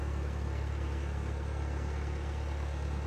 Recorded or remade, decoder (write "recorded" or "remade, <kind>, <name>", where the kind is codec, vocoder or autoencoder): remade, codec, SNAC